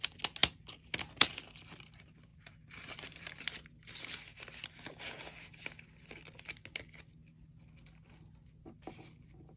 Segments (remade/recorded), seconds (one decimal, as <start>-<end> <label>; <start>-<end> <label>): 0.0-2.3 recorded; 2.3-3.4 remade; 3.4-9.6 recorded